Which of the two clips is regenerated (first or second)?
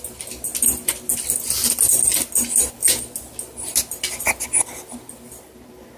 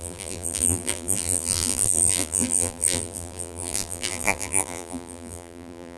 second